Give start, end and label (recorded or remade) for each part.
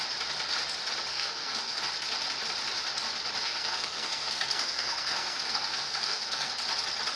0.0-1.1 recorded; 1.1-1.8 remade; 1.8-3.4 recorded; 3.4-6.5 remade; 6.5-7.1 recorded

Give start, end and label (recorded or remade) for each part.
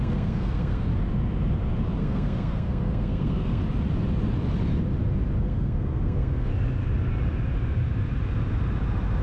0.0-0.9 remade; 0.9-2.0 recorded; 2.0-3.6 remade; 3.6-5.4 recorded; 5.4-6.5 remade; 6.5-9.2 recorded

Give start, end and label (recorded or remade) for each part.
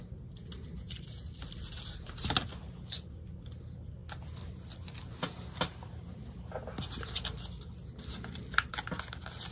0.0-9.5 recorded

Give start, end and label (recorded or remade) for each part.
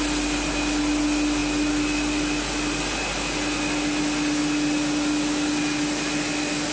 0.0-6.7 recorded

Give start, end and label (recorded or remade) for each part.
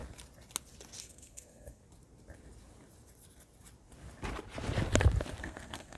0.0-1.0 recorded; 1.0-1.8 remade; 1.8-5.4 recorded; 5.4-6.0 remade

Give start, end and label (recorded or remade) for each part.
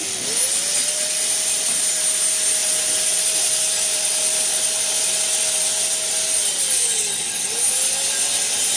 0.0-8.8 recorded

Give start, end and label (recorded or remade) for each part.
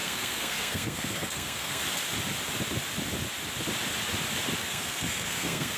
0.0-1.8 remade; 1.8-4.6 recorded; 4.6-5.8 remade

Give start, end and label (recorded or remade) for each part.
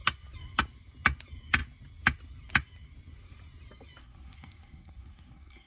0.0-4.0 recorded; 4.0-5.7 remade